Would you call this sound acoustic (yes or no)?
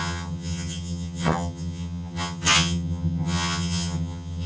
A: no